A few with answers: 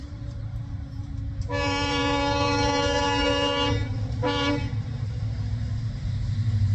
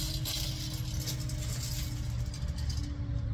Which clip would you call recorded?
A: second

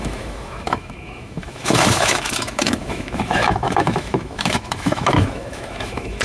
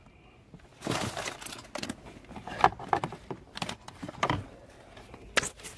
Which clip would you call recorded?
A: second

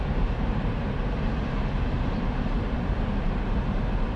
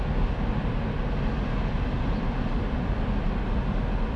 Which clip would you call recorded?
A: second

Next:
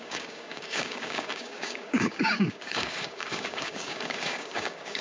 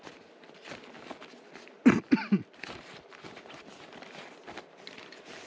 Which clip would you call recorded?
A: second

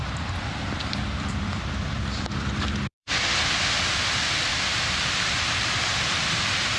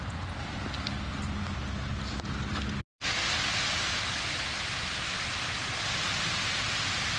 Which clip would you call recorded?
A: second